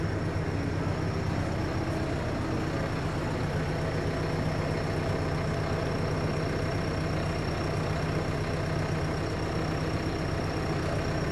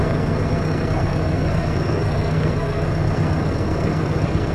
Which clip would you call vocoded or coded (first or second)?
second